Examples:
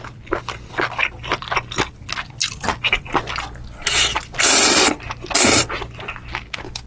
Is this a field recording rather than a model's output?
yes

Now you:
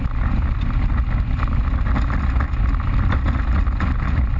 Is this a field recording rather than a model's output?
yes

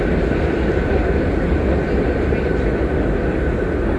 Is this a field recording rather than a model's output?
yes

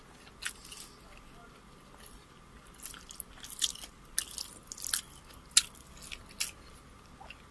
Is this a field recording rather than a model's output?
yes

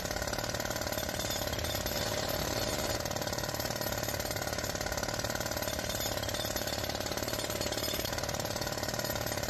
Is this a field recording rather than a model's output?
no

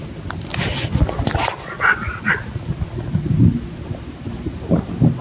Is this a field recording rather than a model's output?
yes